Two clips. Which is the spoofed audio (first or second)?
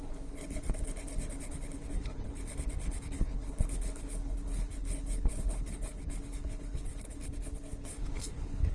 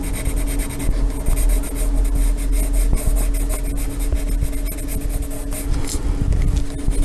first